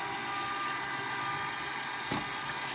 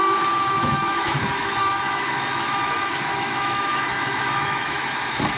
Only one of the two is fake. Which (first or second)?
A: second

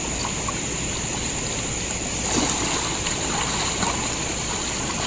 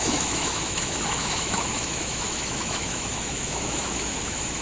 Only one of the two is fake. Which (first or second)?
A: second